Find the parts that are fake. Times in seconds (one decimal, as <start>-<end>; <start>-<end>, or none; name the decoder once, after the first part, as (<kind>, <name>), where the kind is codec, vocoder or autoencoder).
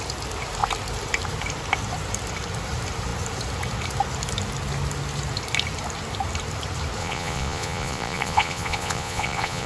7.0-9.7 (vocoder, Vocos)